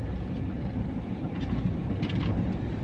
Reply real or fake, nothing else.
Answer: real